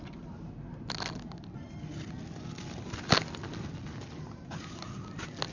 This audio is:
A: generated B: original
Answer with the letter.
B